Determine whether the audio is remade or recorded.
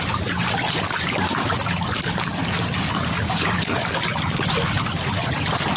recorded